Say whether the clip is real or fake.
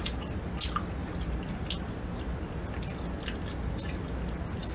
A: real